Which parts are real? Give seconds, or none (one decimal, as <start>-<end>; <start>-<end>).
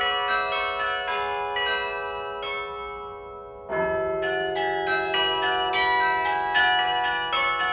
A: 0.0-7.7